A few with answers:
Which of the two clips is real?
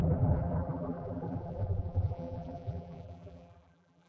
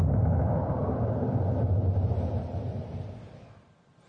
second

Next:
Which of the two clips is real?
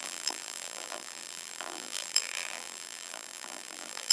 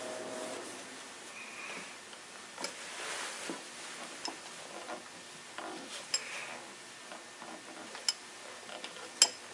second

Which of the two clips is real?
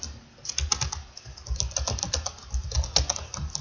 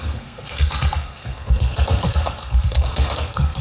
first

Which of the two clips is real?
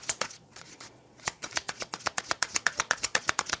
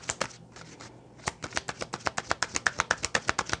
second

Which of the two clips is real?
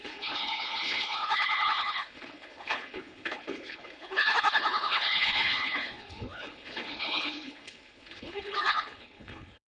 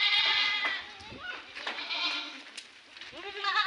second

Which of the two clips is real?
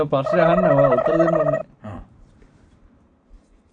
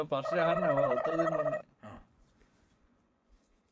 first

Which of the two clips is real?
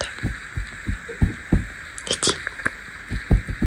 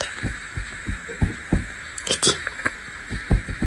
first